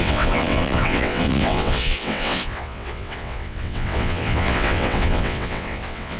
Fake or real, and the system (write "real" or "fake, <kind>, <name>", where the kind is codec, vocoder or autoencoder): fake, vocoder, WaveNeXt